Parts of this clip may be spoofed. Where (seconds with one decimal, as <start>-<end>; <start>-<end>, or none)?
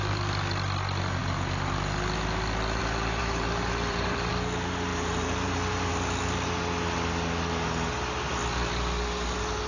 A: 3.2-4.3; 4.9-5.9